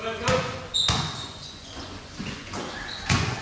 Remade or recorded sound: remade